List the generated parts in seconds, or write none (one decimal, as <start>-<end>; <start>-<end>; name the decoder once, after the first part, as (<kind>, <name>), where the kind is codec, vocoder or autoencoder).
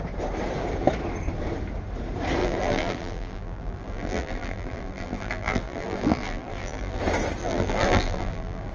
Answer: 2.4-7.0 (vocoder, BigVGAN v2); 7.4-8.7